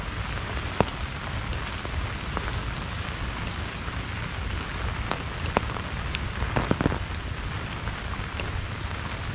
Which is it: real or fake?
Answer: real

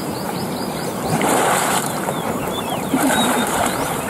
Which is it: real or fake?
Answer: fake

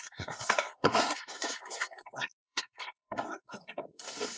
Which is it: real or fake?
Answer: fake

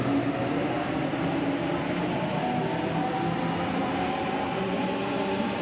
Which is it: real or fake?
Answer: real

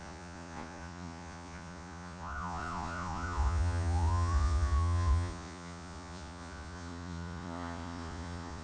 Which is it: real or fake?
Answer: fake